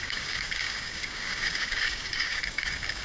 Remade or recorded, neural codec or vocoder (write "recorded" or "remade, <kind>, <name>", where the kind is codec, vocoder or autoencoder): remade, codec, DAC